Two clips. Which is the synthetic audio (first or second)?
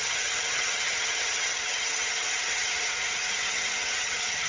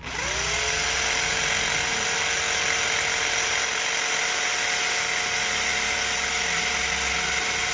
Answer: first